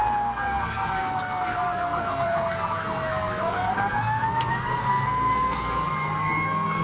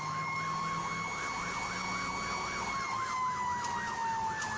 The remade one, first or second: first